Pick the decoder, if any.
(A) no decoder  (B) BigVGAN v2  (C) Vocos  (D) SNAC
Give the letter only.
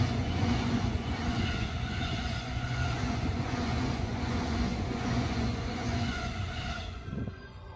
C